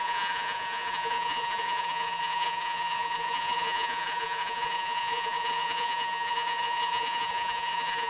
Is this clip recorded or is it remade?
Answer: remade